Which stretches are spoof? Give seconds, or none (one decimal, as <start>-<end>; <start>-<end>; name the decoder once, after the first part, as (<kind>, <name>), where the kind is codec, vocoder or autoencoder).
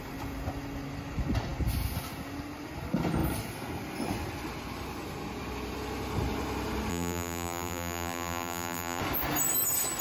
6.9-9.0 (vocoder, BigVGAN v2)